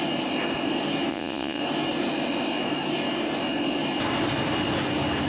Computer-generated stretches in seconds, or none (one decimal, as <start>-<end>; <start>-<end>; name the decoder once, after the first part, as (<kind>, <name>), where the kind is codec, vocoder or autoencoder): 1.1-1.6 (vocoder, Vocos)